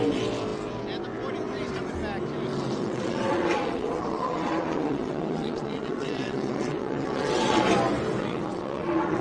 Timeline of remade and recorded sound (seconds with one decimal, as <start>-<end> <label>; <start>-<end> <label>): 0.0-2.8 recorded; 2.8-7.6 remade; 7.6-8.2 recorded; 8.2-9.2 remade